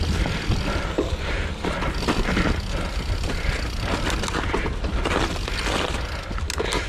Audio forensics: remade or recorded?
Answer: recorded